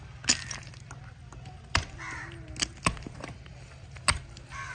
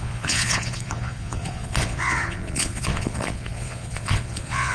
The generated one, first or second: second